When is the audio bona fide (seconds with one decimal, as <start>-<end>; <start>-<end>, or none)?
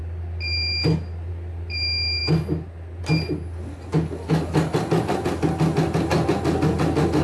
0.0-7.2